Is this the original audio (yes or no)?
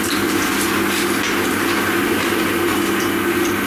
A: yes